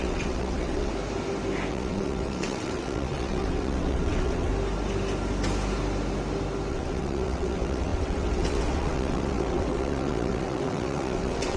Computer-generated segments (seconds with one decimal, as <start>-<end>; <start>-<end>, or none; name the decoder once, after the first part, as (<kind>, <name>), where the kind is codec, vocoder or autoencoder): 0.0-0.9 (vocoder, WaveNeXt); 1.7-4.5; 6.7-11.6